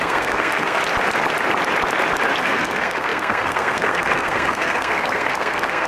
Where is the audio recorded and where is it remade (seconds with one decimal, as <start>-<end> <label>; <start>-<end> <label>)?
0.0-0.8 remade; 0.8-2.4 recorded; 2.4-5.9 remade